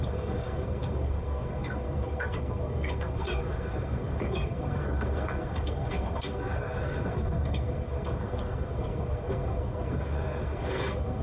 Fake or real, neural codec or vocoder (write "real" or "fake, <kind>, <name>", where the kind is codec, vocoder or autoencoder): fake, codec, SNAC